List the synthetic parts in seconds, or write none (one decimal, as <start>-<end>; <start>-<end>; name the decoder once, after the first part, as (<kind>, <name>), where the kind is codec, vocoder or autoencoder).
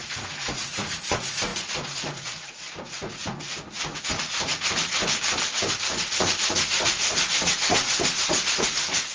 0.0-5.0 (vocoder, Vocos); 5.7-9.1